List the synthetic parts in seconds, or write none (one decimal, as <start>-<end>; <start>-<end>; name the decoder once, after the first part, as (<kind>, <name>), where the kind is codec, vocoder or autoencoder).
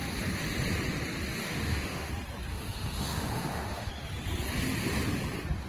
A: 1.4-2.1 (autoencoder, DAC-VAE); 2.5-3.9